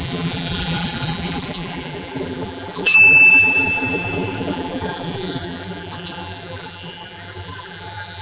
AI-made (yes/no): yes